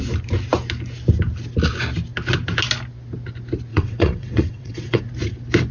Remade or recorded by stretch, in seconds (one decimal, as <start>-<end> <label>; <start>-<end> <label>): 0.0-3.7 recorded; 3.7-5.0 remade; 5.0-5.7 recorded